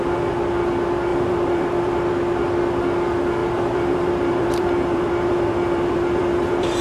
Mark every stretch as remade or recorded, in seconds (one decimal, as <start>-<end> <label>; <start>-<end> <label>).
0.0-1.1 recorded; 1.1-2.1 remade; 2.1-3.4 recorded; 3.4-6.8 remade